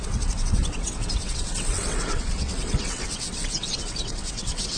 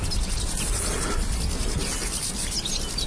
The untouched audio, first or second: second